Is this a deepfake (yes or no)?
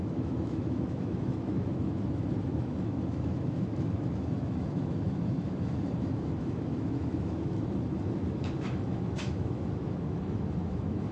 yes